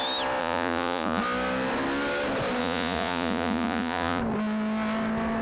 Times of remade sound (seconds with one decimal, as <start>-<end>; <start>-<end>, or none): 0.4-1.2; 2.6-4.2